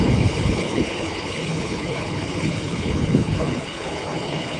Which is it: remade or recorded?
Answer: remade